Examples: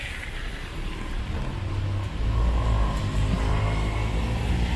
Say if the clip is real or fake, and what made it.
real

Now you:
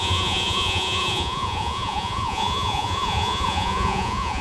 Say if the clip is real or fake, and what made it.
fake, vocoder, Vocos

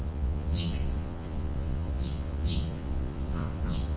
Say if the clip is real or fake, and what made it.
fake, vocoder, Vocos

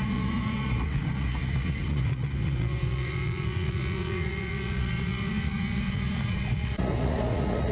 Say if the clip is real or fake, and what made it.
fake, vocoder, Vocos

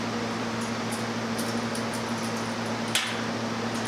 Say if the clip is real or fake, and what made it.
real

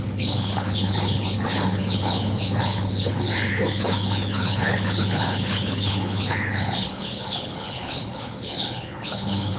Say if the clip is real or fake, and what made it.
fake, codec, HILCodec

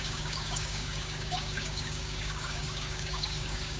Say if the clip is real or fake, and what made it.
fake, codec, DAC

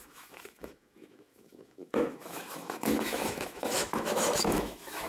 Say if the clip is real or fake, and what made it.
fake, autoencoder, DAC-VAE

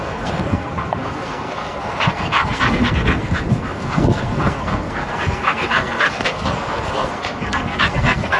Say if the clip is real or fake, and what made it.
fake, codec, SNAC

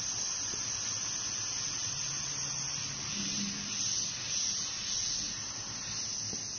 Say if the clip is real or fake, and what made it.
real